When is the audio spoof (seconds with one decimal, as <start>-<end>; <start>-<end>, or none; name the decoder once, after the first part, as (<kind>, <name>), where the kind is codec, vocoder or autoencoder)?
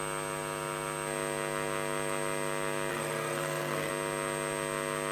2.9-3.9 (codec, SNAC)